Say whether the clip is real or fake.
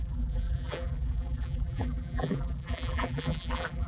fake